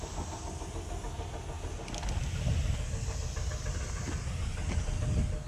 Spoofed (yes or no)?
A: no